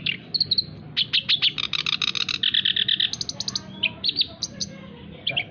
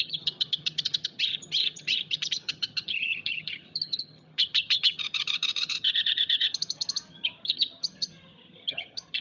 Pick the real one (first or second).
first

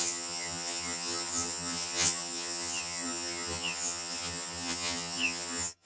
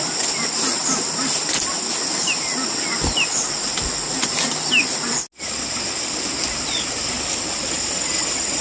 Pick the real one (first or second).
second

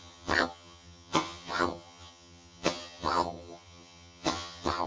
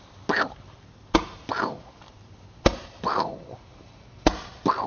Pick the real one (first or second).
second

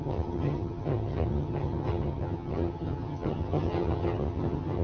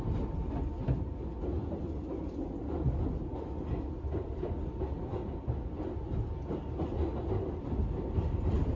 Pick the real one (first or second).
second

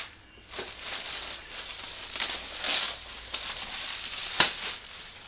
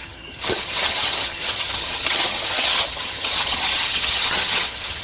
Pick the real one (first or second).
first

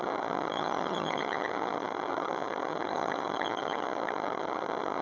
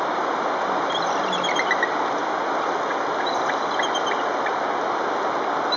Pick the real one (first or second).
second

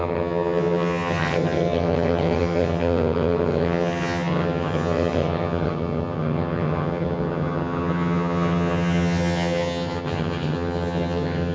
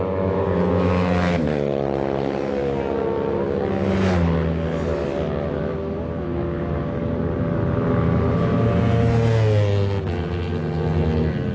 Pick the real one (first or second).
second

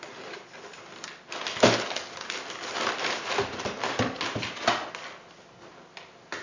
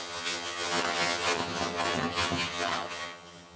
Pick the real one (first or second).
first